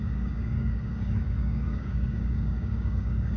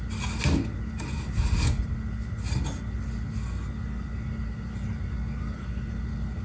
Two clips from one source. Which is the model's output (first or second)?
first